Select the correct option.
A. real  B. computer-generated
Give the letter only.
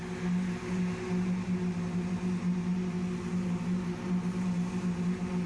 A